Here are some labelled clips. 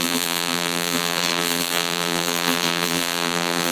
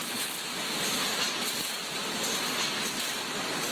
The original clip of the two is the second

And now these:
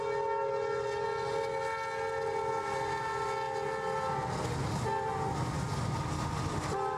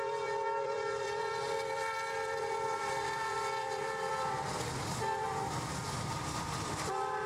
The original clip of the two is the first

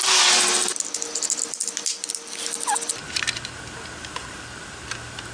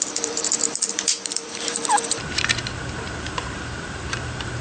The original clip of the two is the first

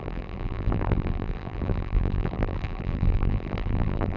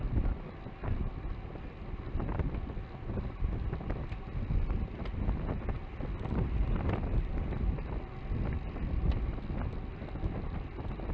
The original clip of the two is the second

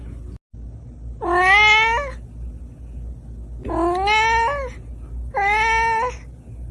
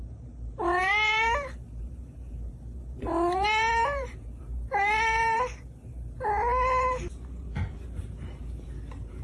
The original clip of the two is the first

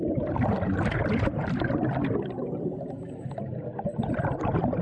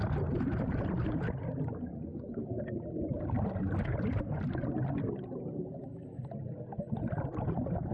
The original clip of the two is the second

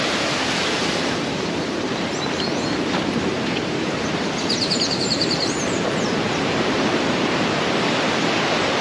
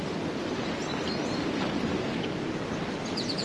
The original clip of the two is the second